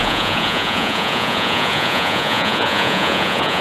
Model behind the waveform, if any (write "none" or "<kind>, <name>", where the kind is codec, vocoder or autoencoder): vocoder, Vocos